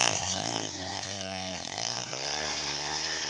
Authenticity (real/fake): fake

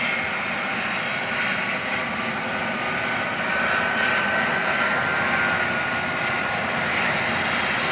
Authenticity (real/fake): real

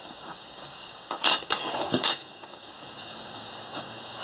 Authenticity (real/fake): fake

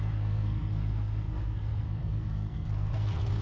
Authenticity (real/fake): fake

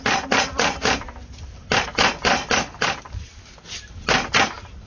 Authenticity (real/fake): real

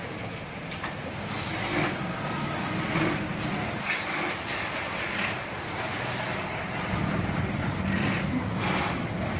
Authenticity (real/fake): real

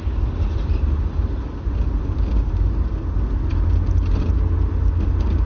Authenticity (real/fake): real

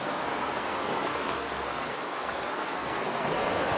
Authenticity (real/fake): fake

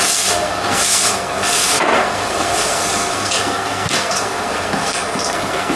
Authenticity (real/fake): fake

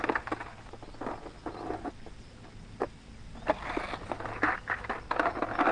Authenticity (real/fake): real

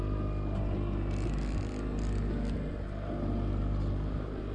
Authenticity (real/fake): real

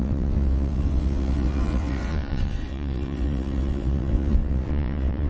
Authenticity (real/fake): fake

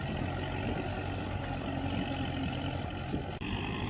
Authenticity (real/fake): real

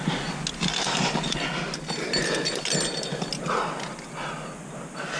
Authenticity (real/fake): real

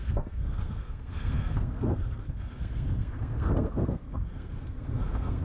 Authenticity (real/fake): fake